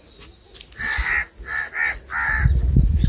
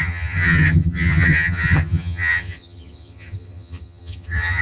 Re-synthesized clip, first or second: second